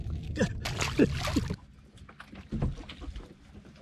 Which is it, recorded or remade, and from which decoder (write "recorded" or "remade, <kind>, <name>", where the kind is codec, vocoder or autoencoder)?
recorded